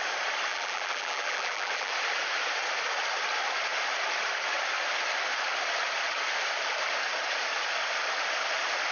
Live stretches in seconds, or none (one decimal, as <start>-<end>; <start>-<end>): 0.0-0.5; 1.9-8.9